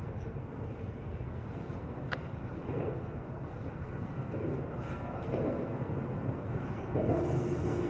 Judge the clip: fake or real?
fake